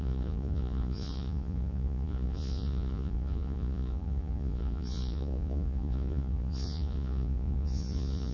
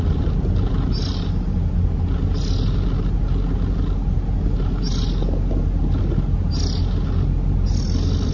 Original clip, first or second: second